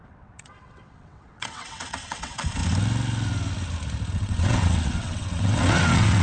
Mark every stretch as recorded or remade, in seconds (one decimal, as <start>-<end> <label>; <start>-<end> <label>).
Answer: 0.0-2.6 remade; 2.6-4.1 recorded; 4.1-6.2 remade

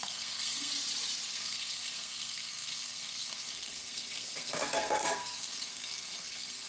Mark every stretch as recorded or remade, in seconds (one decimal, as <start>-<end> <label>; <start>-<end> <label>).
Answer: 0.0-0.7 remade; 0.7-1.3 recorded; 1.3-6.7 remade